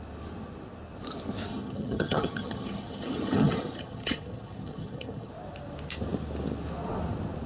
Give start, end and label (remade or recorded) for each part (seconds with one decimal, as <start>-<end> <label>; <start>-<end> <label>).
0.0-1.5 recorded; 1.5-5.3 remade; 5.3-7.5 recorded